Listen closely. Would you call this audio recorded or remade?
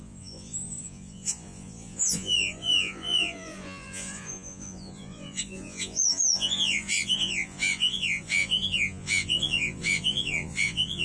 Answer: remade